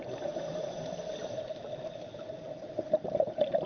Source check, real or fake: real